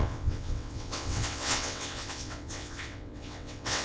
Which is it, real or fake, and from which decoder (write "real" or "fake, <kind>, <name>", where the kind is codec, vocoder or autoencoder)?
fake, vocoder, WaveNeXt